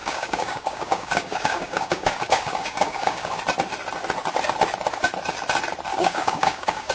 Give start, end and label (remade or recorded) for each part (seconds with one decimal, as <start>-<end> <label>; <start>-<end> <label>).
0.0-3.3 remade; 3.3-5.9 recorded; 5.9-6.9 remade